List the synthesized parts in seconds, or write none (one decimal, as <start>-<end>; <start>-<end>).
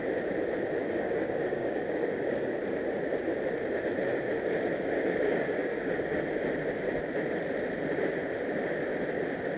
0.8-2.6; 4.7-5.9